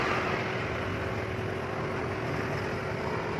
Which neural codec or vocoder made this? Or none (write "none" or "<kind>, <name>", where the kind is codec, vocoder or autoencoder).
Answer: none